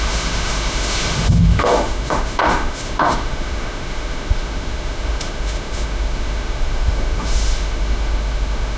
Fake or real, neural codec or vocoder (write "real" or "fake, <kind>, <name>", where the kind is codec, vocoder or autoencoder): fake, autoencoder, DAC-VAE